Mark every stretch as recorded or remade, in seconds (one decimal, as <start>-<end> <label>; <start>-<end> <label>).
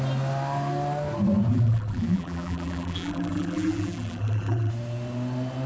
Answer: 0.0-1.5 recorded; 1.5-4.7 remade; 4.7-5.7 recorded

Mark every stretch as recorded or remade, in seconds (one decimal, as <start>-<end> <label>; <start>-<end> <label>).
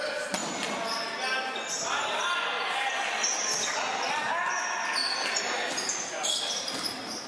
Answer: 0.0-5.0 recorded; 5.0-6.1 remade; 6.1-7.3 recorded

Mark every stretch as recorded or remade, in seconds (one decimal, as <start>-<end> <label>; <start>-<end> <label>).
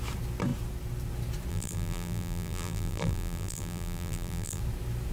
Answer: 0.0-1.5 recorded; 1.5-4.6 remade; 4.6-5.1 recorded